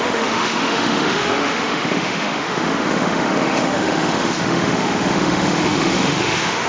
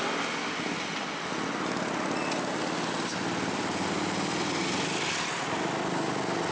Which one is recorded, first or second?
second